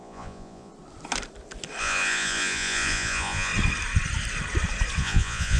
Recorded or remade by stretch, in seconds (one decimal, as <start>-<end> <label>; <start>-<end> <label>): 0.0-0.7 remade; 0.7-1.8 recorded; 1.8-3.5 remade; 3.5-5.0 recorded; 5.0-5.6 remade